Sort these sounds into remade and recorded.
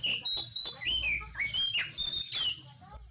recorded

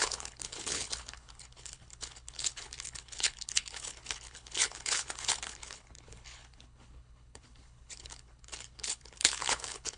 remade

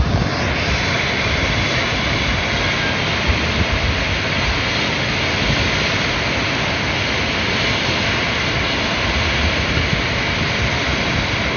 recorded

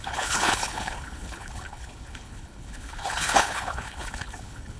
remade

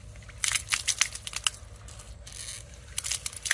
recorded